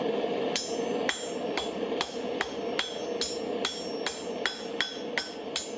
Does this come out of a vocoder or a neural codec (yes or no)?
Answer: no